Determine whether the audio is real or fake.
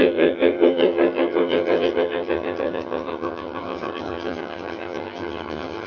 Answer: fake